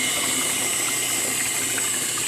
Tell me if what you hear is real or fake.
real